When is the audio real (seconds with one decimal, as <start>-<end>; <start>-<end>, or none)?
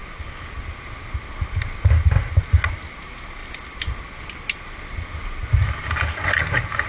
0.0-6.9